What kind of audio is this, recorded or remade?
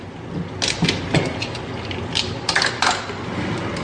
recorded